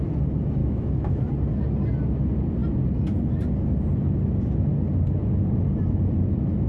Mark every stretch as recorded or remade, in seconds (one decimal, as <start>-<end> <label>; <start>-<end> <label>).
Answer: 0.0-0.6 recorded; 0.6-1.3 remade; 1.3-6.7 recorded